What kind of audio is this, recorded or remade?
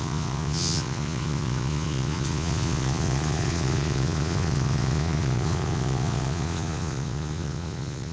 remade